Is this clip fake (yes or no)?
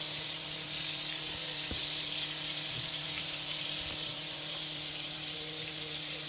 yes